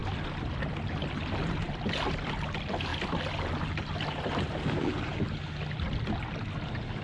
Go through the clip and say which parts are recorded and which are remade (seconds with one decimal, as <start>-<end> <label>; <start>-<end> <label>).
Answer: 0.0-7.0 recorded

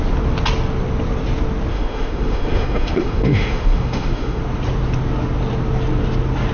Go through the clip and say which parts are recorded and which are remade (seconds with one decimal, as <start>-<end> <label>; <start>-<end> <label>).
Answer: 0.0-1.7 recorded; 1.7-4.4 remade; 4.4-6.5 recorded

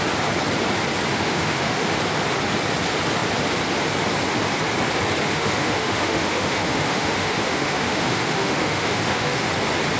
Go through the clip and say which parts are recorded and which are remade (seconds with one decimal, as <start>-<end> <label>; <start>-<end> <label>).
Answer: 0.0-1.1 recorded; 1.1-2.0 remade; 2.0-5.2 recorded; 5.2-9.5 remade; 9.5-10.0 recorded

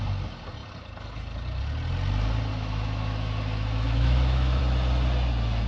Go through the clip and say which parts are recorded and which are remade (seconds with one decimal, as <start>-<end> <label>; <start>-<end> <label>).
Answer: 0.0-2.5 recorded; 2.5-4.6 remade; 4.6-5.7 recorded

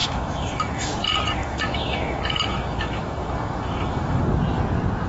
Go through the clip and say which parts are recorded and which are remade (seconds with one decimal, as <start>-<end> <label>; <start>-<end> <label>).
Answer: 0.0-0.9 remade; 0.9-1.4 recorded; 1.4-4.2 remade; 4.2-5.1 recorded